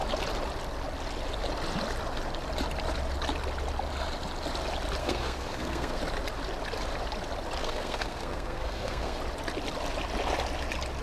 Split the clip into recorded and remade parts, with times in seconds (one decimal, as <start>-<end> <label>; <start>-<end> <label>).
0.0-5.0 recorded; 5.0-6.0 remade; 6.0-7.6 recorded; 7.6-9.2 remade; 9.2-11.0 recorded